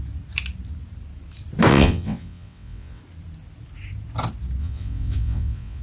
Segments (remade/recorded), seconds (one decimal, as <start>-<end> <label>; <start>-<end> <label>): 0.0-1.7 recorded; 1.7-3.0 remade; 3.0-4.6 recorded; 4.6-5.8 remade